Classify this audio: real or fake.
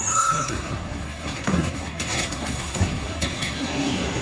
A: fake